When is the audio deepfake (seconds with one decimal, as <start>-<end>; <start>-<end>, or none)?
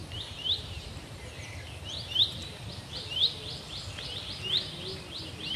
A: 0.0-1.2